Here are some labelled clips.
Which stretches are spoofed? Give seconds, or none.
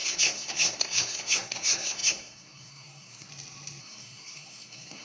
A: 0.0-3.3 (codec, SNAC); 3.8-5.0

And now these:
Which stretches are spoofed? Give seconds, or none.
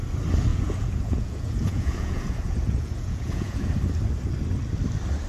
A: 0.5-3.7 (vocoder, Vocos)